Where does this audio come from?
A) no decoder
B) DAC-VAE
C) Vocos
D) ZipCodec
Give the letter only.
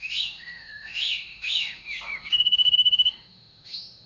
B